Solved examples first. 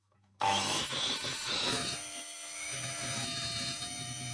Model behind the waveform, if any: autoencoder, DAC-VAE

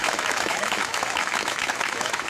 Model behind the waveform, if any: autoencoder, DAC-VAE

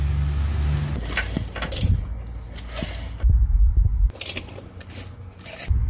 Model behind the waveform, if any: none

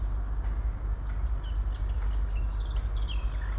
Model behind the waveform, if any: none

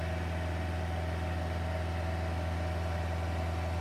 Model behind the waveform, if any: none